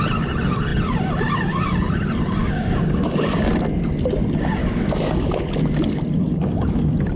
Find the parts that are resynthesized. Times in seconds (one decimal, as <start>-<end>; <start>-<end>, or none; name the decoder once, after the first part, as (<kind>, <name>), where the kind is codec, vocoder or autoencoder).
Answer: 2.4-3.5 (codec, DAC); 4.6-5.4; 6.2-6.8